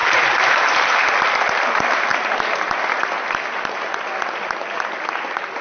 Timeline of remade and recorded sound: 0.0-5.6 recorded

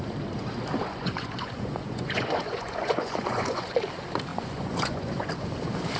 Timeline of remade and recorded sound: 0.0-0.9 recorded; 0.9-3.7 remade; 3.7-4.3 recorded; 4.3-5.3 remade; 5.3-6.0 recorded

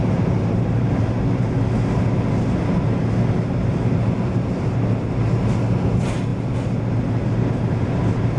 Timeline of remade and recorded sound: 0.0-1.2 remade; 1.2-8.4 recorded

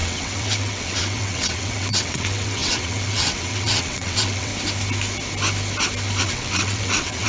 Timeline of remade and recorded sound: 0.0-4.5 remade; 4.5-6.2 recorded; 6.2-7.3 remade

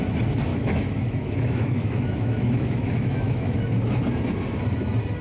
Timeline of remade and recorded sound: 0.0-0.5 recorded; 0.5-3.6 remade; 3.6-5.2 recorded